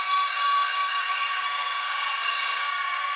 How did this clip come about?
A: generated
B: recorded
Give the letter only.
A